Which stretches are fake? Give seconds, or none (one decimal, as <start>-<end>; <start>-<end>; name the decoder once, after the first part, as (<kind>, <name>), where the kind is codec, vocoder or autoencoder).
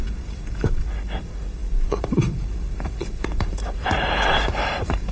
0.0-5.1 (vocoder, BigVGAN v2)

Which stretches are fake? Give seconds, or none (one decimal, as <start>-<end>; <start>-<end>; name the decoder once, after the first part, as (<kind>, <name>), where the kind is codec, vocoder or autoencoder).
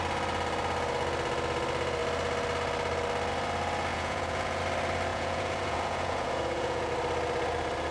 3.9-4.6 (vocoder, Vocos); 5.1-6.9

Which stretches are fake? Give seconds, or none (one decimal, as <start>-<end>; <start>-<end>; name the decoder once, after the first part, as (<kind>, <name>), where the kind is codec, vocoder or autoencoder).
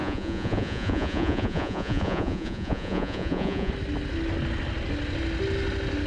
0.0-3.7 (vocoder, Vocos)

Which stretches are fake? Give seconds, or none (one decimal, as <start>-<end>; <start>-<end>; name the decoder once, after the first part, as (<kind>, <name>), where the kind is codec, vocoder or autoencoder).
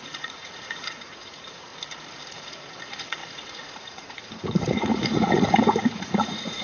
0.0-1.7 (vocoder, Vocos); 2.3-6.6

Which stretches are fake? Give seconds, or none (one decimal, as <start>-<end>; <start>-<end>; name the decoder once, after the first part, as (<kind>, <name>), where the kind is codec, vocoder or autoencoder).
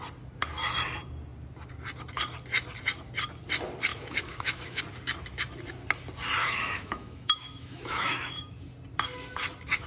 3.9-4.8 (autoencoder, DAC-VAE); 6.4-8.6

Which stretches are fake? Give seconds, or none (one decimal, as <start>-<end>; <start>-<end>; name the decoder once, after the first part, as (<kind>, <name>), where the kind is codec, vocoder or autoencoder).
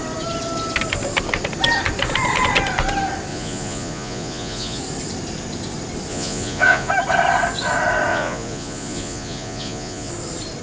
3.3-4.8 (vocoder, Vocos); 6.1-6.9; 8.1-10.1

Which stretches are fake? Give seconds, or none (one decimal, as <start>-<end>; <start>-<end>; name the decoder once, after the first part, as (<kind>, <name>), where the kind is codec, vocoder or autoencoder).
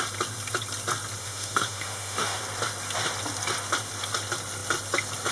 1.2-2.4 (autoencoder, DAC-VAE)